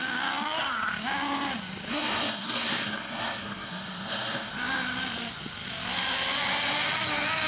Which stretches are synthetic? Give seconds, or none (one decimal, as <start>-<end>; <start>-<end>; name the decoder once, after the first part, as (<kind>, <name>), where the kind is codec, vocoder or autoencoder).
1.9-4.5 (codec, SNAC)